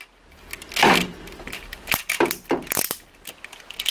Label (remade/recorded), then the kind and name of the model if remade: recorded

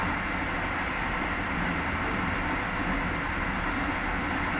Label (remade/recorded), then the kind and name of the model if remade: recorded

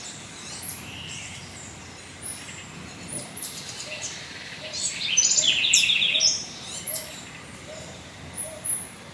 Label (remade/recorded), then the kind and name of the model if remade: remade, vocoder, BigVGAN v2